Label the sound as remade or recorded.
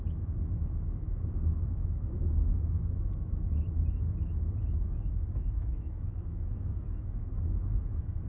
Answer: remade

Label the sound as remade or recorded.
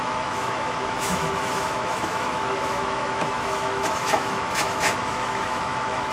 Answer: remade